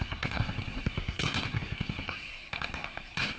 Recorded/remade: remade